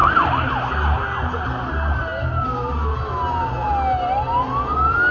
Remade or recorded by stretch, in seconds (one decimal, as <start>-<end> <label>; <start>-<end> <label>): 0.0-5.1 recorded